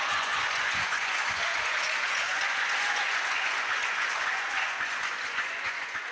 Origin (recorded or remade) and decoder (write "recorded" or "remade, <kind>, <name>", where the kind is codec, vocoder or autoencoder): remade, vocoder, Vocos